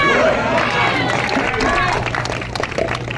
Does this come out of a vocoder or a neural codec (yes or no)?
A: no